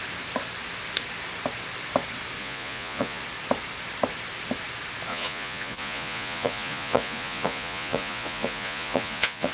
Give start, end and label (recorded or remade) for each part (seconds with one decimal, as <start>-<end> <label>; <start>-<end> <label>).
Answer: 0.0-2.4 recorded; 2.4-3.2 remade; 3.2-5.1 recorded; 5.1-9.5 remade